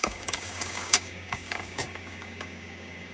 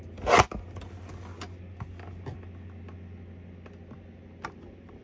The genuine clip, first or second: second